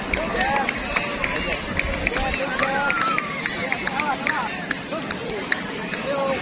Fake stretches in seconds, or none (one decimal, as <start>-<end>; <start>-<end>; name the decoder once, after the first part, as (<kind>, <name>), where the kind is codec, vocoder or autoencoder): 5.2-5.7 (vocoder, BigVGAN v2)